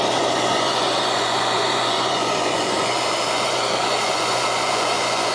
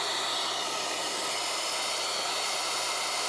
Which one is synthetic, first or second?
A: first